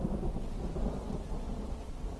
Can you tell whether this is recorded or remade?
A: recorded